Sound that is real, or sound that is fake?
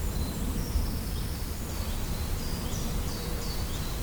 fake